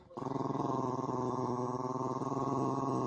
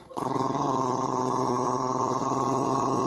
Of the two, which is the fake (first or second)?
second